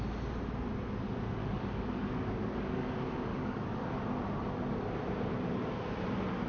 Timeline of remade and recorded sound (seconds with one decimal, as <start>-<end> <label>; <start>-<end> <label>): 0.0-1.4 recorded; 1.4-2.9 remade; 2.9-3.3 recorded; 3.3-3.9 remade; 3.9-6.5 recorded